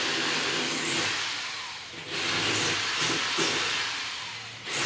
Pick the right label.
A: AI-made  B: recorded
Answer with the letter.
B